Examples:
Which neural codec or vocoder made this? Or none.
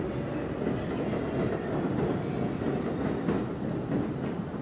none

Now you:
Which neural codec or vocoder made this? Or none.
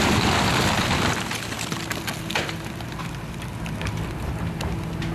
none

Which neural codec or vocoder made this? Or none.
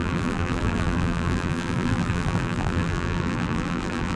vocoder, BigVGAN v2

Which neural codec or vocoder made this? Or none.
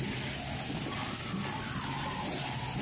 none